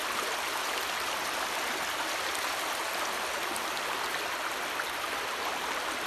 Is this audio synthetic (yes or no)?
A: no